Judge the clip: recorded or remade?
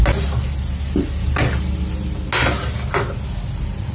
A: recorded